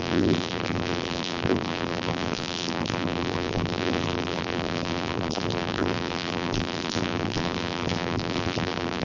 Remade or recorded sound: remade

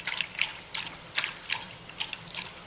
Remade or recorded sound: remade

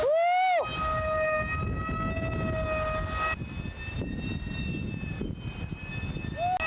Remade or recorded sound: recorded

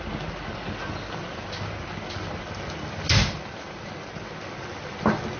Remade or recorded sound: recorded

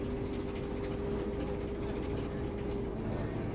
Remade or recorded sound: recorded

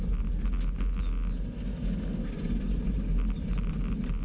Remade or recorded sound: recorded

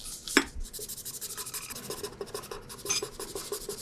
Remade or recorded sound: recorded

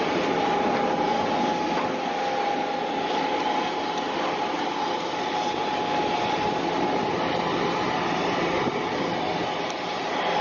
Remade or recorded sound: recorded